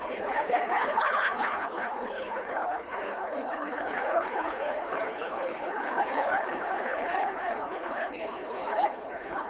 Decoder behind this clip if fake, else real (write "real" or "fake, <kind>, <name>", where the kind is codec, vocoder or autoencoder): fake, codec, HILCodec